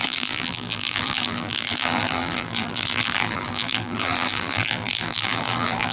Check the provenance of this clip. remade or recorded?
remade